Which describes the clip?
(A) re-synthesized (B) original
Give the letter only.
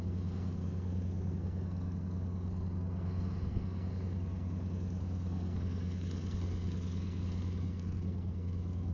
A